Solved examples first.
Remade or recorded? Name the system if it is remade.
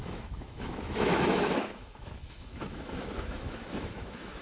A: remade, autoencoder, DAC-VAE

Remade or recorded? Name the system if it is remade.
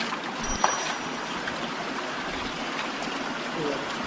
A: recorded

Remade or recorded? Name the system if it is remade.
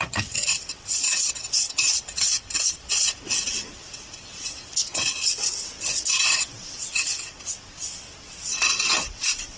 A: remade, vocoder, WaveNeXt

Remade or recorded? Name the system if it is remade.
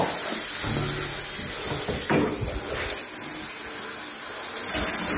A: recorded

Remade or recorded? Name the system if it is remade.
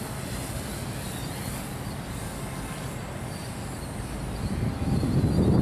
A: recorded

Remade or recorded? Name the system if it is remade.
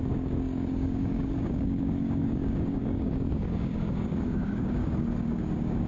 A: remade, codec, DAC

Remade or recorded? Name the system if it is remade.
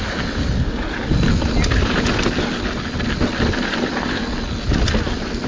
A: recorded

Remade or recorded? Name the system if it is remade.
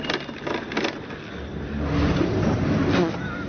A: recorded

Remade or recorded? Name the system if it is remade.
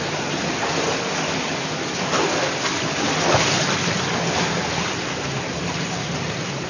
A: recorded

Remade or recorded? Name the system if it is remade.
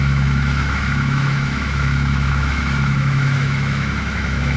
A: remade, autoencoder, DAC-VAE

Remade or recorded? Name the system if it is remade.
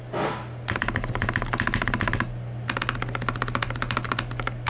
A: recorded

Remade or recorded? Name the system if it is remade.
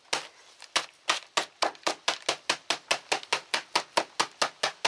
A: recorded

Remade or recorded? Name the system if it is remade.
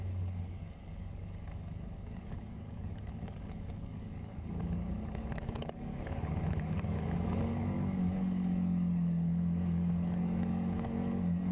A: remade, codec, DAC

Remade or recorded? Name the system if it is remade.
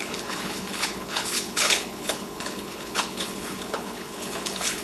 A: remade, codec, HILCodec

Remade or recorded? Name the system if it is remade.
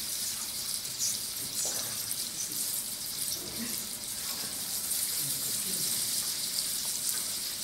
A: remade, vocoder, BigVGAN v2